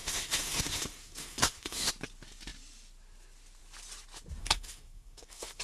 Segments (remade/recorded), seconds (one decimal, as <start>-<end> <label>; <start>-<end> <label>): 0.0-1.9 remade; 1.9-4.4 recorded; 4.4-5.6 remade